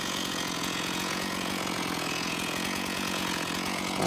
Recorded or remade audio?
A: remade